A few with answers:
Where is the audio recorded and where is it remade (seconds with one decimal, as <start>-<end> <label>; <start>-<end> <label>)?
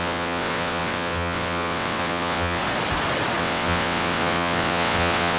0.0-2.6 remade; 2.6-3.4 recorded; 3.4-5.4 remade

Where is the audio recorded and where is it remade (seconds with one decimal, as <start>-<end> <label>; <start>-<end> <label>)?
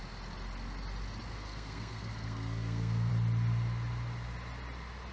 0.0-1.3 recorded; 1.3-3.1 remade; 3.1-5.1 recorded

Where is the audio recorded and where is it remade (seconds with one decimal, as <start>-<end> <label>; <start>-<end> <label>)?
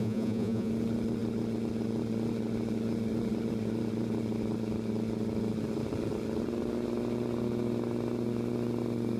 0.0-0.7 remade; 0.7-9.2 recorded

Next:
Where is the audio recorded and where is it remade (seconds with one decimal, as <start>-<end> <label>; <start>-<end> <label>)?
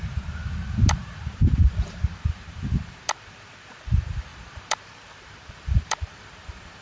0.0-6.8 remade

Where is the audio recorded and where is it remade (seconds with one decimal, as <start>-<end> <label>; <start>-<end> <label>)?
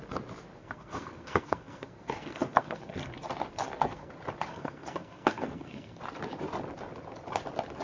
0.0-0.6 recorded; 0.6-3.1 remade; 3.1-3.5 recorded; 3.5-4.1 remade; 4.1-4.5 recorded; 4.5-6.0 remade; 6.0-7.8 recorded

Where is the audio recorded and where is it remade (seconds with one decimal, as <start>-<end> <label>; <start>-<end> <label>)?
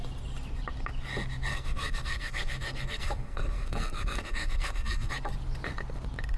0.0-1.5 recorded; 1.5-5.1 remade; 5.1-6.4 recorded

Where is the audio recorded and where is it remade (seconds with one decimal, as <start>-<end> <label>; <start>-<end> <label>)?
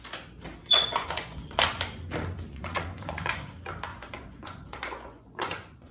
0.0-0.6 recorded; 0.6-1.6 remade; 1.6-2.5 recorded; 2.5-3.5 remade; 3.5-3.9 recorded; 3.9-5.9 remade